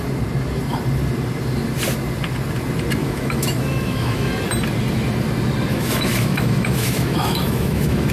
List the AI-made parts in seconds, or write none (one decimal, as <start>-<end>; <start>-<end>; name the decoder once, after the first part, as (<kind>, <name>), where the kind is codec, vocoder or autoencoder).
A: 3.0-4.3 (autoencoder, DAC-VAE); 5.7-8.1